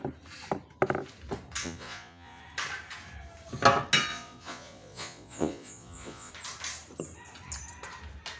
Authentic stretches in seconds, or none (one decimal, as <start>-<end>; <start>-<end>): 0.0-1.6; 2.4-4.1; 6.3-8.4